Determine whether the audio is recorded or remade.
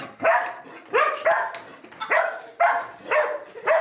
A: recorded